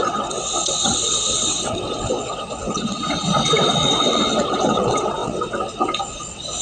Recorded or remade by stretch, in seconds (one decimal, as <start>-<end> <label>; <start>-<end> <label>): 0.0-6.6 remade